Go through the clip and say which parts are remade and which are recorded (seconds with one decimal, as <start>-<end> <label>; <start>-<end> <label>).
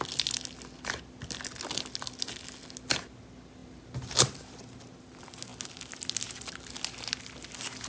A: 0.0-7.9 recorded